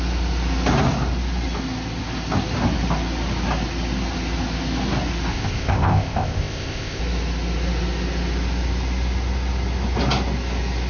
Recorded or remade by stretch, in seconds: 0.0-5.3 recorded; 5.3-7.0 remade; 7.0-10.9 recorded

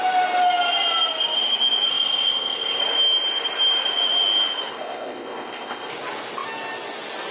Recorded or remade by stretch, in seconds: 0.0-1.9 recorded; 1.9-2.8 remade; 2.8-4.7 recorded; 4.7-5.9 remade; 5.9-7.3 recorded